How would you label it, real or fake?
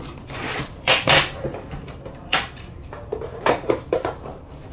fake